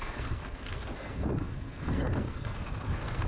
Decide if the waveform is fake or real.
fake